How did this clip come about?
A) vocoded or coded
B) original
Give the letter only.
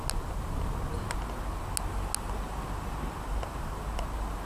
B